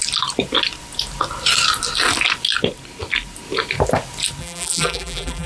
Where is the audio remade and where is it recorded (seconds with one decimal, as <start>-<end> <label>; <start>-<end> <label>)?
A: 0.0-4.4 recorded; 4.4-5.5 remade